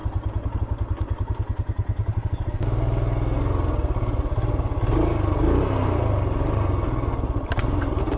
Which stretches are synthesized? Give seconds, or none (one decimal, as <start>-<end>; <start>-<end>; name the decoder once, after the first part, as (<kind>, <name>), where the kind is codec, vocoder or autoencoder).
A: none